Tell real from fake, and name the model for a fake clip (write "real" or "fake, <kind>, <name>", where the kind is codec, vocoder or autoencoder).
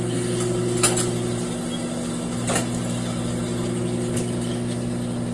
real